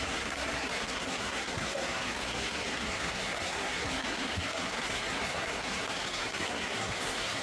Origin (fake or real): fake